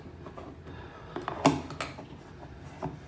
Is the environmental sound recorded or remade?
recorded